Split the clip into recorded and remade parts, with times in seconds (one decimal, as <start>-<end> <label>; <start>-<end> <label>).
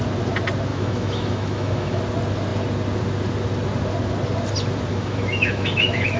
0.0-0.7 recorded; 0.7-2.0 remade; 2.0-4.9 recorded; 4.9-6.2 remade